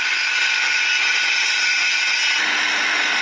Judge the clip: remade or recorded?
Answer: recorded